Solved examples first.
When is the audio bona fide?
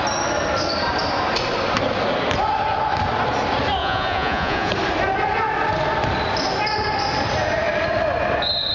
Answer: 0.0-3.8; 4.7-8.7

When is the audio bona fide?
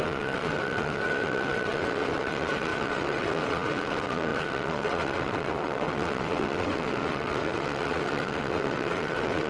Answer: none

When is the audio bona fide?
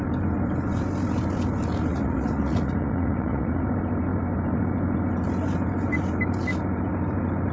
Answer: 0.0-1.9; 3.6-7.5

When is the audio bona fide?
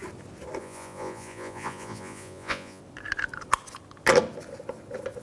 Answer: 0.0-0.6; 2.8-5.2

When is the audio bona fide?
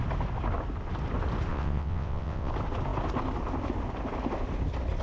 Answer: 0.0-1.5; 2.5-5.0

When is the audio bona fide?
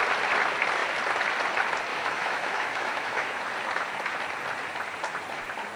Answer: 0.0-1.9; 3.4-5.8